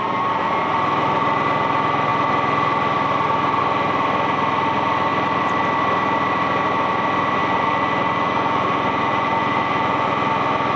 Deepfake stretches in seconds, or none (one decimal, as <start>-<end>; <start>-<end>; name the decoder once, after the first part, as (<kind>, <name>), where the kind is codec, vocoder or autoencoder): 7.4-10.1 (vocoder, Vocos)